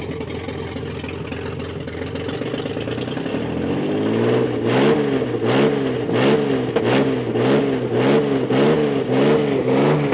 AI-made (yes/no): no